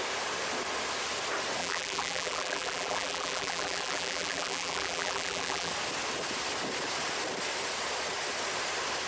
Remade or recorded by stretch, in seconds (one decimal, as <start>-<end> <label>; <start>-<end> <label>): 0.0-1.6 recorded; 1.6-5.7 remade; 5.7-9.1 recorded